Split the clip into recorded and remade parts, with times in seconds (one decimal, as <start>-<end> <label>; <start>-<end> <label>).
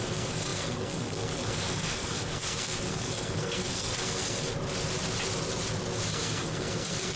0.0-4.5 remade; 4.5-6.1 recorded; 6.1-7.2 remade